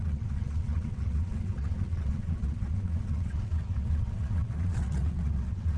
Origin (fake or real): fake